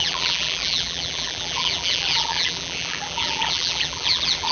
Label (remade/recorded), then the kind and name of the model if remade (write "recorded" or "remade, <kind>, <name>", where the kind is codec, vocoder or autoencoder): remade, vocoder, BigVGAN v2